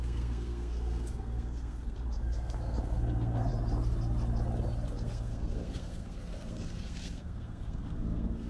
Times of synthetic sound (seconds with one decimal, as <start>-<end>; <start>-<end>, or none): 0.0-3.5; 4.9-8.5